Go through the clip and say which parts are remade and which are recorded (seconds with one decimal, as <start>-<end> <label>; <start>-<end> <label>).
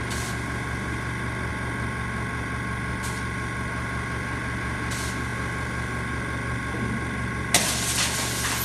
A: 0.0-8.6 recorded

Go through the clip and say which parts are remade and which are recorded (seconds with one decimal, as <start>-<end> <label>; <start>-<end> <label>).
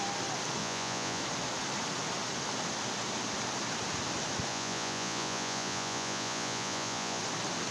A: 0.0-0.6 recorded; 0.6-1.2 remade; 1.2-4.5 recorded; 4.5-7.2 remade; 7.2-7.7 recorded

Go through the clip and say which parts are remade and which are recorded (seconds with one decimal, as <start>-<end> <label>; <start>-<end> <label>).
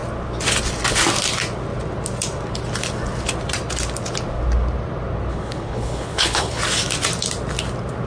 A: 0.0-5.3 recorded; 5.3-6.6 remade; 6.6-8.1 recorded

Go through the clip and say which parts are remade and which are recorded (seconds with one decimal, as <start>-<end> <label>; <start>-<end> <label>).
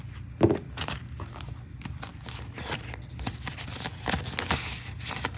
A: 0.0-5.4 recorded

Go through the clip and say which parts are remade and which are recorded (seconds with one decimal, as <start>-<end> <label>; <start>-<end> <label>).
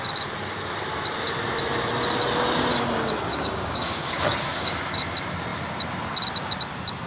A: 0.0-3.3 recorded; 3.3-4.8 remade; 4.8-7.1 recorded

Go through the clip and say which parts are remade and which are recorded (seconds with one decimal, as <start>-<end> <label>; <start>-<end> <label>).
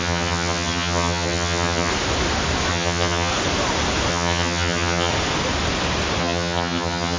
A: 0.0-1.9 remade; 1.9-2.7 recorded; 2.7-3.3 remade; 3.3-4.1 recorded; 4.1-5.1 remade; 5.1-6.2 recorded; 6.2-7.2 remade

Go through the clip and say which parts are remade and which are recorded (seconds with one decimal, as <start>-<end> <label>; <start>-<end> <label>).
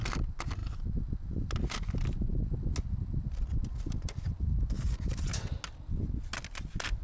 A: 0.0-7.0 recorded